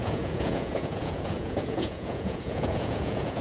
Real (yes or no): no